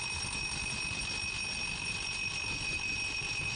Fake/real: real